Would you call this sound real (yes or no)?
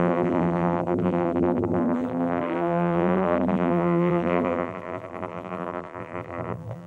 no